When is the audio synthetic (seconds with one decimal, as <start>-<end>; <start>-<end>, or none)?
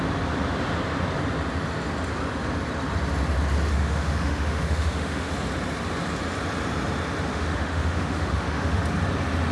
3.7-5.3; 7.3-8.8